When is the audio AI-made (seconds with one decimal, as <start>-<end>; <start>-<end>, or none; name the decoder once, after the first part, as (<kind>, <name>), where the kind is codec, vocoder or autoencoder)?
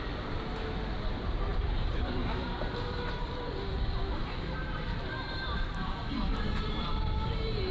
1.5-3.7 (vocoder, BigVGAN v2); 4.2-5.6; 6.0-7.7